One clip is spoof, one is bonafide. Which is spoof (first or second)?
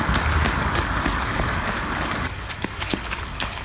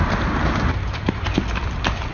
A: first